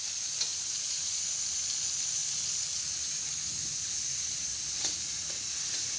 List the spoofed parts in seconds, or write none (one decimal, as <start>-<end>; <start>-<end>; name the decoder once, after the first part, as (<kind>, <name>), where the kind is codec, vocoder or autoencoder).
0.5-1.4 (vocoder, Vocos); 4.5-6.0